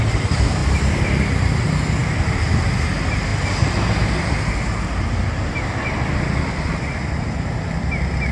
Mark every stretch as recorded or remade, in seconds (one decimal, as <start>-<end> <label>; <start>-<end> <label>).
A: 0.0-0.6 recorded; 0.6-1.1 remade; 1.1-8.3 recorded

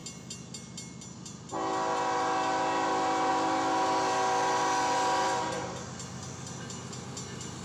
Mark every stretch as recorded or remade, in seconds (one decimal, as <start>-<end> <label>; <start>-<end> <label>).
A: 0.0-7.6 recorded

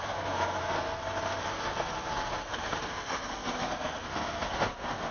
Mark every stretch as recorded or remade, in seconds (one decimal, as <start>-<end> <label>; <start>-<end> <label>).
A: 0.0-1.0 remade; 1.0-1.5 recorded; 1.5-5.1 remade

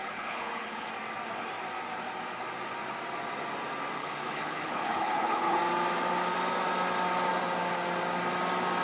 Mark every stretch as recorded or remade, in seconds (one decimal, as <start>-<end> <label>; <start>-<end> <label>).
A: 0.0-0.9 remade; 0.9-4.0 recorded; 4.0-5.6 remade; 5.6-8.8 recorded

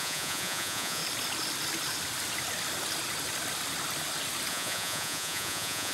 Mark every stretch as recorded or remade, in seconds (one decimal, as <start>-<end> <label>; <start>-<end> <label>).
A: 0.0-1.0 remade; 1.0-4.5 recorded; 4.5-5.9 remade

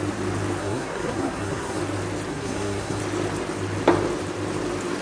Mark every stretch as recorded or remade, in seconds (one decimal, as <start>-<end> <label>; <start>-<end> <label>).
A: 0.0-0.6 recorded; 0.6-1.8 remade; 1.8-2.3 recorded; 2.3-3.0 remade; 3.0-5.0 recorded

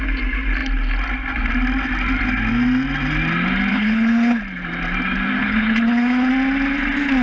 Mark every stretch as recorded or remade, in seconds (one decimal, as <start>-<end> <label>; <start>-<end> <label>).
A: 0.0-3.7 recorded; 3.7-4.4 remade; 4.4-5.4 recorded; 5.4-6.3 remade; 6.3-7.2 recorded